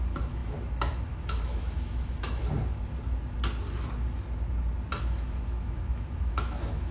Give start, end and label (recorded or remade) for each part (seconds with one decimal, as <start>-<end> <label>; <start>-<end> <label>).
0.0-2.4 remade; 2.4-5.0 recorded; 5.0-6.9 remade

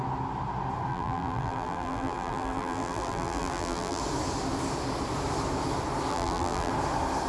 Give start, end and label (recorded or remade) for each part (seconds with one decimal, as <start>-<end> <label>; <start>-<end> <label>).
0.0-0.9 recorded; 0.9-4.0 remade; 4.0-6.1 recorded; 6.1-6.7 remade; 6.7-7.3 recorded

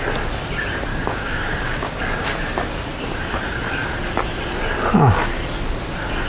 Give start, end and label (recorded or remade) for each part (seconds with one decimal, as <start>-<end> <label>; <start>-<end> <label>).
0.0-0.9 recorded; 0.9-2.0 remade; 2.0-6.3 recorded

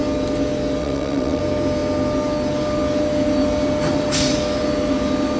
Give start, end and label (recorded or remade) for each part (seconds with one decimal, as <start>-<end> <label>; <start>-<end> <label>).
0.0-0.8 recorded; 0.8-1.4 remade; 1.4-5.4 recorded